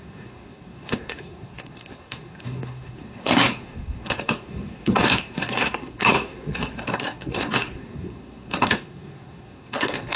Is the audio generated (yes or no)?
yes